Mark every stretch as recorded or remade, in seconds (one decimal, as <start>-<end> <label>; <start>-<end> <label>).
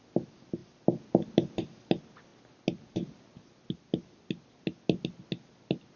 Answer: 0.0-6.0 recorded